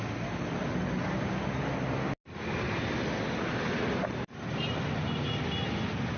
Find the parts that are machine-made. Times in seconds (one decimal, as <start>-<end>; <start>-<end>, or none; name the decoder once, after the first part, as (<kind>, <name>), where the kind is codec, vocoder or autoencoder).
none